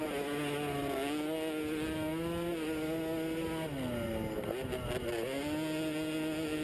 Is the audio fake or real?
real